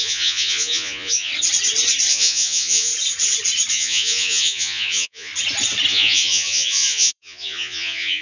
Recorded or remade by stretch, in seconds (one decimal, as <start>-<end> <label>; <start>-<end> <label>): 0.0-1.3 remade; 1.3-2.1 recorded; 2.1-2.9 remade; 2.9-3.7 recorded; 3.7-5.3 remade; 5.3-5.9 recorded; 5.9-8.2 remade